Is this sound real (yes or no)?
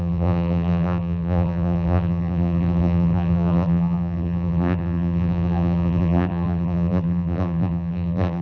no